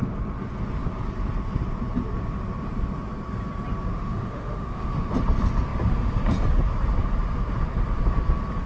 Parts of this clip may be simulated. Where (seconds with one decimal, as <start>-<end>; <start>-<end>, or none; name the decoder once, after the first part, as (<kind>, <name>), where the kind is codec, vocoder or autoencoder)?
3.9-5.1 (autoencoder, DAC-VAE)